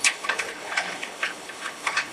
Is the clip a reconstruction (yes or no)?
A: yes